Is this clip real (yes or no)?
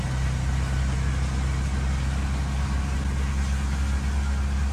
yes